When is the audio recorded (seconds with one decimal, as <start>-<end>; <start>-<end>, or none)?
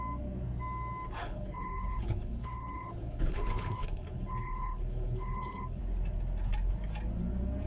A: 0.0-1.2; 5.8-7.7